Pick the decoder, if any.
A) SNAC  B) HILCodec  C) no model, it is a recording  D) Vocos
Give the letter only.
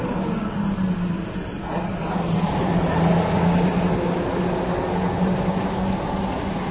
C